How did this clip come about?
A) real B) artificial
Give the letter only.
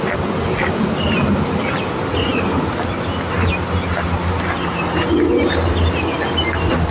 A